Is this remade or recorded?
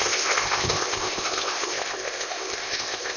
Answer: remade